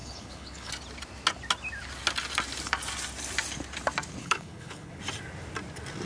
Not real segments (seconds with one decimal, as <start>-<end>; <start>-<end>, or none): 0.0-0.7; 4.2-5.0